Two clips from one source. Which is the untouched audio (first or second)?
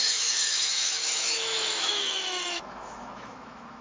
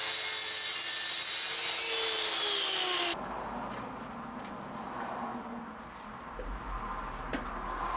second